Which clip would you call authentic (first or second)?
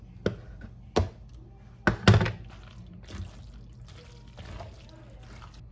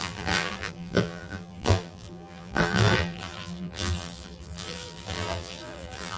first